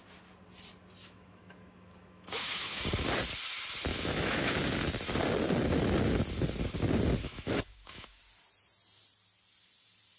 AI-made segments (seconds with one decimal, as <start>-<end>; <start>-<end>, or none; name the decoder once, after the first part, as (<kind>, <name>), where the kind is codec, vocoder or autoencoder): 1.0-2.8 (autoencoder, DAC-VAE); 3.9-4.6; 7.2-8.2

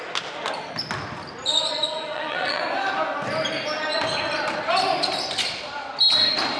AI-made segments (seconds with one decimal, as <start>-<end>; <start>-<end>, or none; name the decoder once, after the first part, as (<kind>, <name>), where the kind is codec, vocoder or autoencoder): 1.7-2.6 (vocoder, Vocos)

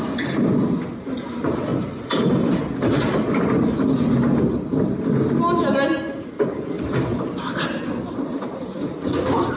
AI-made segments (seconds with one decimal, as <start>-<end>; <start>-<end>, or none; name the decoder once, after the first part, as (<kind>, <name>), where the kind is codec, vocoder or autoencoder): none